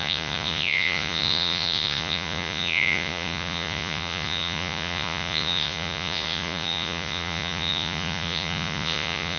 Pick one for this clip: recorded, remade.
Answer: remade